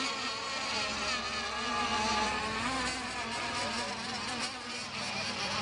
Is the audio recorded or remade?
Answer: recorded